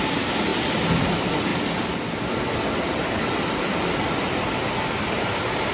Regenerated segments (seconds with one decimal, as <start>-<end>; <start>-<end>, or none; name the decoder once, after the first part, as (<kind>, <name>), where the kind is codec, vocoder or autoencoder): none